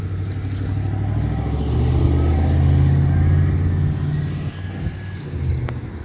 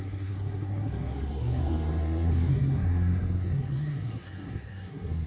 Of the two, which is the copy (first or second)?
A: second